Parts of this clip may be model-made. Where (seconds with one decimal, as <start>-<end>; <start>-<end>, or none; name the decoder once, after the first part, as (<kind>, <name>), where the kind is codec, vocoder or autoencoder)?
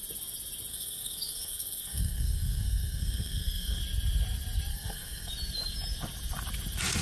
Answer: 0.7-3.8 (codec, SNAC); 4.7-5.3